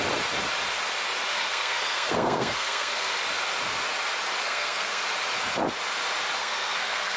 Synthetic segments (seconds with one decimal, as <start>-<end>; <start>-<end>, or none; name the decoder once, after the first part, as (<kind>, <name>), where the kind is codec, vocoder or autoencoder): 1.3-3.1 (codec, SNAC); 4.4-5.0; 6.4-7.2

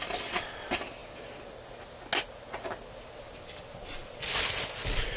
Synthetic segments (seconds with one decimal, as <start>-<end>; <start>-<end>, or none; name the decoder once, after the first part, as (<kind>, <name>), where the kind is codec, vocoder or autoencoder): none

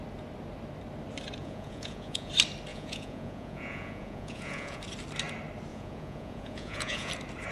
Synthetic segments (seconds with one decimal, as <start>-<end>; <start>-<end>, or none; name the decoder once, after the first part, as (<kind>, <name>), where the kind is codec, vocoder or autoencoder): 1.4-2.3 (vocoder, Vocos); 2.7-4.8; 5.7-7.1

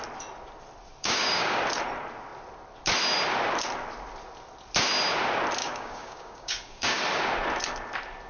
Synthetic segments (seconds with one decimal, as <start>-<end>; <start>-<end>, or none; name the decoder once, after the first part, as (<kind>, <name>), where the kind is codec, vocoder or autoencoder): 1.0-1.6 (codec, DAC); 5.6-7.0

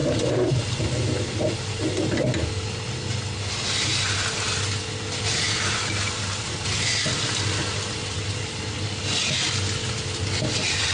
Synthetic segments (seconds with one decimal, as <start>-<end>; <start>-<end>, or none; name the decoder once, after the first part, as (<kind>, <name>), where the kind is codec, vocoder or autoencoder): none